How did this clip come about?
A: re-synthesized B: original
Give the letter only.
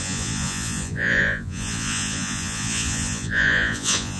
A